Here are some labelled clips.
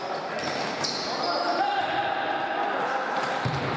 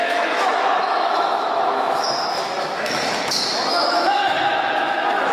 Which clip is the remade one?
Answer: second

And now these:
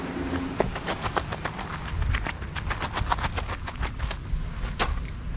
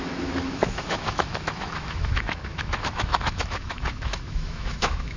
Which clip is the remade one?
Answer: second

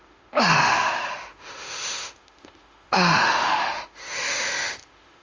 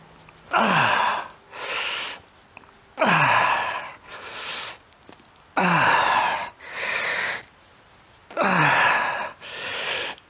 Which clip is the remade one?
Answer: first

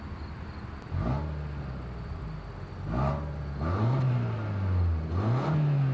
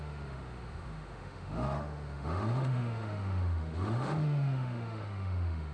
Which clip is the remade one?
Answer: second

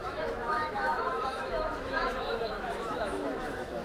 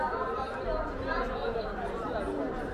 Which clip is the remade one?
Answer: first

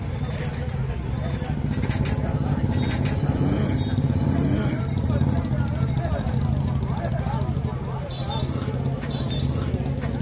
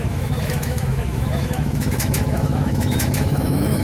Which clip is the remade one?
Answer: second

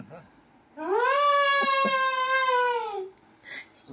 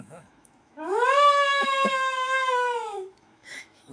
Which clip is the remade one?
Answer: second